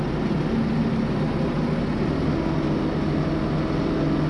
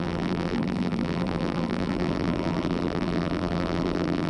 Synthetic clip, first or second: second